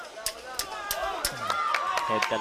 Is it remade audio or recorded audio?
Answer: recorded